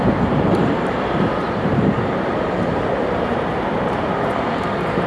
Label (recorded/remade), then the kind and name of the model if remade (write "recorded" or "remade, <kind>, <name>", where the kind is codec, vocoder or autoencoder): remade, vocoder, BigVGAN v2